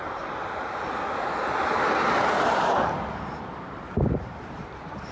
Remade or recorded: remade